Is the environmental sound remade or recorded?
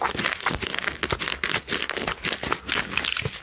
recorded